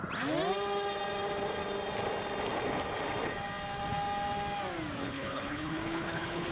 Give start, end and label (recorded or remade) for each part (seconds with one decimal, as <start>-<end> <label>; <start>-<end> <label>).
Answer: 0.0-5.0 recorded; 5.0-6.5 remade